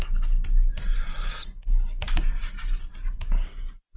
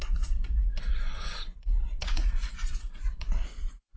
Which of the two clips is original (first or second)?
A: first